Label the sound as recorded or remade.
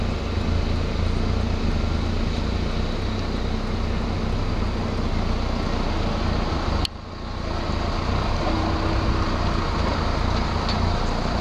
recorded